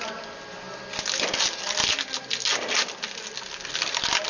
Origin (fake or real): real